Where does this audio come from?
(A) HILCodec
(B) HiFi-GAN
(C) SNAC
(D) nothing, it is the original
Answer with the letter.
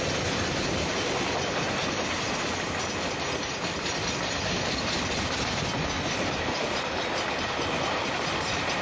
D